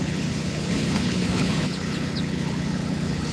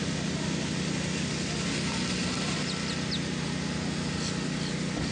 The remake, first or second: first